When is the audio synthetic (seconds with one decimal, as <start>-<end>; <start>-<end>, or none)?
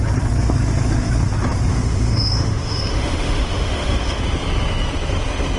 1.7-4.2